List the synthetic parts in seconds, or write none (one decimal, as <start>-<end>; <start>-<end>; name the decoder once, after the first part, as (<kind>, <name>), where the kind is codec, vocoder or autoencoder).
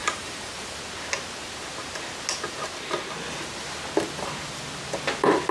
0.0-0.8 (vocoder, BigVGAN v2)